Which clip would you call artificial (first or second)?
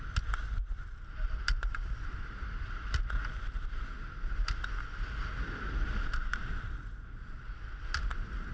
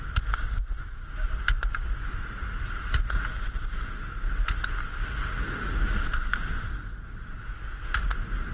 first